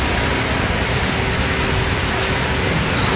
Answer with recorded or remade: recorded